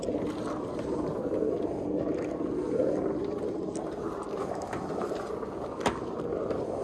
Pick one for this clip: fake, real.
real